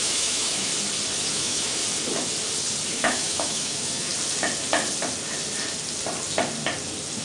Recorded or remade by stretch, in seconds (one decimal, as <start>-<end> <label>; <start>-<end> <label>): 0.0-0.7 remade; 0.7-1.3 recorded; 1.3-1.8 remade; 1.8-2.9 recorded; 2.9-4.1 remade; 4.1-7.2 recorded